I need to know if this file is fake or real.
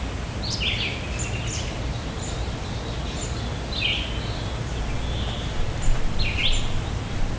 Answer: real